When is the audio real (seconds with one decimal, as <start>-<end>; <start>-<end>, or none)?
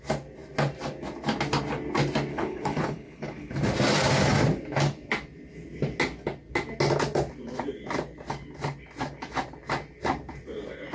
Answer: 0.0-2.3; 3.5-10.9